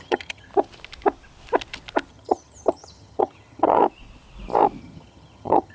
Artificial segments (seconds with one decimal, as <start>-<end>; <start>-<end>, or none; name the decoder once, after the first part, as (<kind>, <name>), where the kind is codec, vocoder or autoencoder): 0.0-0.5 (vocoder, HiFi-GAN); 2.1-3.8; 4.8-5.7